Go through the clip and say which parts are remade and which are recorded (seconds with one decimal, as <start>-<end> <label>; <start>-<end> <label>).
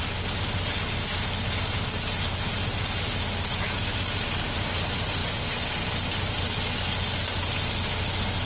0.0-8.5 recorded